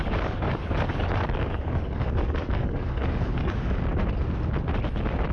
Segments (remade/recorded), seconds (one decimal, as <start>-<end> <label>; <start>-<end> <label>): 0.0-3.9 remade; 3.9-5.3 recorded